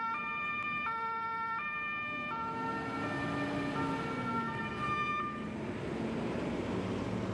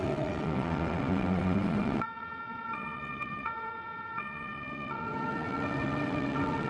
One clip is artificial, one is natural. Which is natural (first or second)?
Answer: first